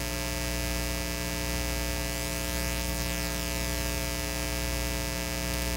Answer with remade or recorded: recorded